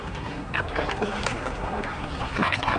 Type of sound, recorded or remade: remade